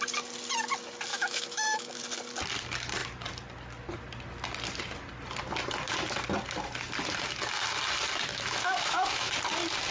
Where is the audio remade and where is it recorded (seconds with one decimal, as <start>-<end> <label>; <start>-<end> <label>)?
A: 0.0-1.1 recorded; 1.1-2.0 remade; 2.0-8.3 recorded; 8.3-9.3 remade; 9.3-9.9 recorded